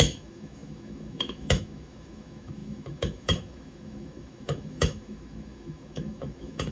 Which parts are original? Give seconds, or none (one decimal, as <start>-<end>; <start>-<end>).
none